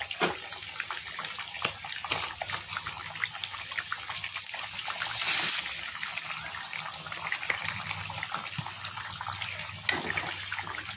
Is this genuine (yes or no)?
yes